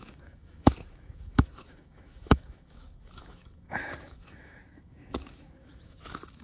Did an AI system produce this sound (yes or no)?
yes